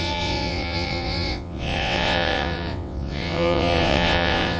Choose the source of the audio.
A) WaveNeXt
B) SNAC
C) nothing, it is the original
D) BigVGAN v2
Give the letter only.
A